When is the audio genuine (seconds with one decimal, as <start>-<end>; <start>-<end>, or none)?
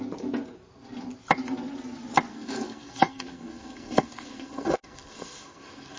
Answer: 0.0-2.3